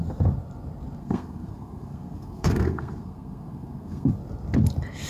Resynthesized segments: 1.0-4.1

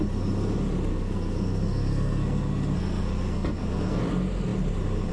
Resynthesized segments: 0.9-4.0

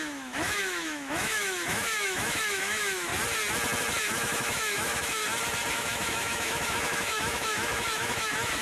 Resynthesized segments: 0.0-3.1; 4.0-5.2; 5.7-8.6

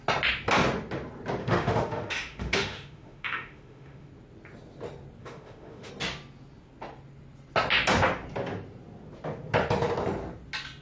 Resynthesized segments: 1.4-4.1; 5.2-5.9

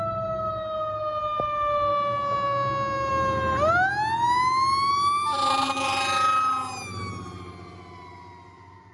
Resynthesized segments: none